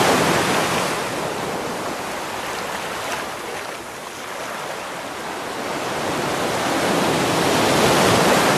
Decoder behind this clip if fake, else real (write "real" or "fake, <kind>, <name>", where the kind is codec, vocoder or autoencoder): real